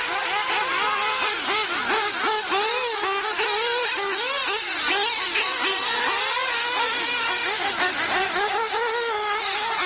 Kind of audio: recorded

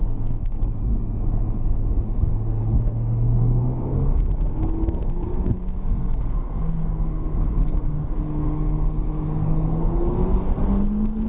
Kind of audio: remade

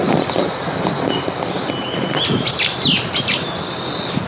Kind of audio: recorded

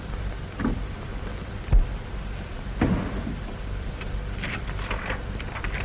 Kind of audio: remade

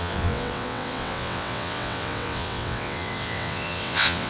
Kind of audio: remade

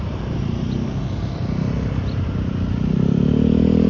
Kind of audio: recorded